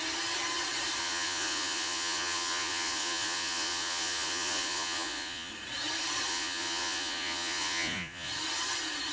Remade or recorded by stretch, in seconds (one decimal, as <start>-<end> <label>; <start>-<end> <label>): 0.0-1.0 recorded; 1.0-5.5 remade; 5.5-6.3 recorded; 6.3-8.3 remade; 8.3-9.1 recorded